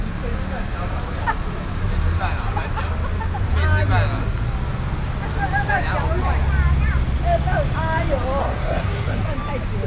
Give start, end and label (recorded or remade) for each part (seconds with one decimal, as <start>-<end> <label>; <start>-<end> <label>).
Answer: 0.0-8.4 recorded; 8.4-9.2 remade; 9.2-9.9 recorded